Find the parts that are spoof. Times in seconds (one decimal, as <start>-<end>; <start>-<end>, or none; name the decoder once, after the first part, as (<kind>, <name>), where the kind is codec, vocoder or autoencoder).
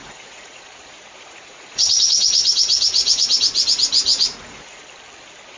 0.0-3.4 (vocoder, Vocos); 4.1-4.8